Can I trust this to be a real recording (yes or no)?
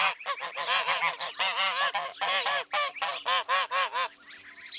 yes